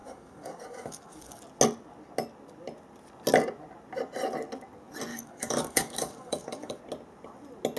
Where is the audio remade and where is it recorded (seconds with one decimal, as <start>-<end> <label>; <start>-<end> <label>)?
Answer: 0.0-1.4 remade; 1.4-5.1 recorded; 5.1-6.8 remade; 6.8-7.8 recorded